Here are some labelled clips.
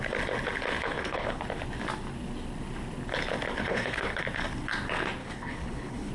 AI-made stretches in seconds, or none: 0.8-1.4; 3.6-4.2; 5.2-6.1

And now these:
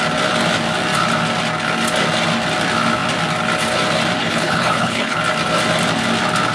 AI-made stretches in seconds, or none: 4.2-5.2

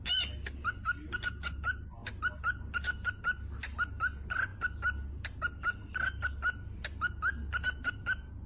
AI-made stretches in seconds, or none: none

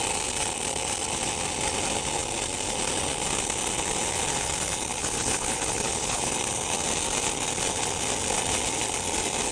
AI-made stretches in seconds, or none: 5.0-6.3

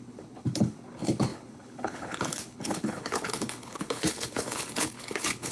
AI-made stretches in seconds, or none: 0.0-5.5

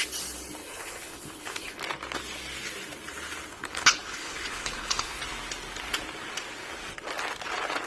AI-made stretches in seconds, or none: 0.6-1.8; 3.5-5.2

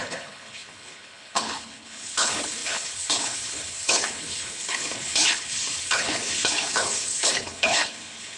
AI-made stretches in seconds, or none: 0.0-8.4